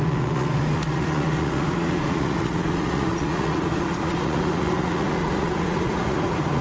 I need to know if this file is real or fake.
fake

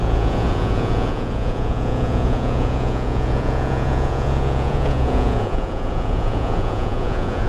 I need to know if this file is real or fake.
fake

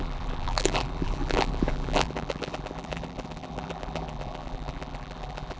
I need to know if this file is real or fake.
fake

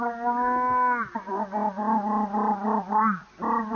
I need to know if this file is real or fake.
real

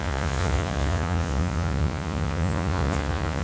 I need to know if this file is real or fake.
fake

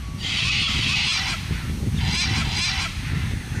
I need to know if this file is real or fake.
real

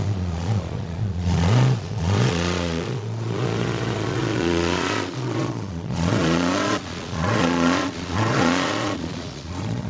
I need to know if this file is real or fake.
fake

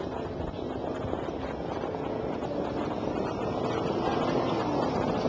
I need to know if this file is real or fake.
real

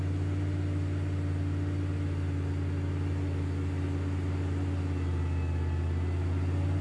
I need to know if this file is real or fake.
real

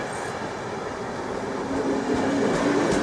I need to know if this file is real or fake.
real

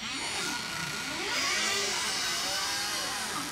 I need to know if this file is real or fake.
real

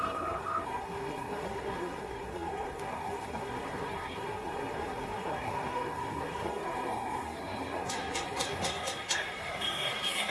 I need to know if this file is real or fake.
fake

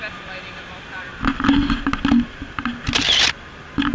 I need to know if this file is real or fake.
real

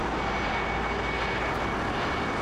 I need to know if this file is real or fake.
real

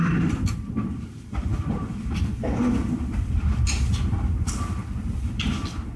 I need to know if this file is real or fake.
real